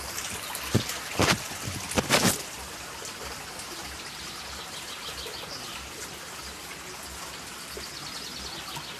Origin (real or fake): real